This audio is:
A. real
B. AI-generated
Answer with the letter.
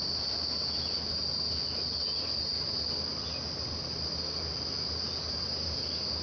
A